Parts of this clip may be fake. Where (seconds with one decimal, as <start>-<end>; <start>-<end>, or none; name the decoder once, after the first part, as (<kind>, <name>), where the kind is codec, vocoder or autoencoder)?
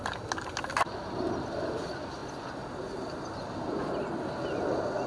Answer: none